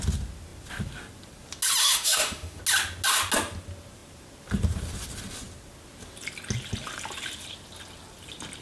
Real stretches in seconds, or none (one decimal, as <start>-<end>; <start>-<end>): 0.0-1.8; 2.6-8.6